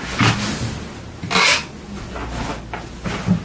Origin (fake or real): real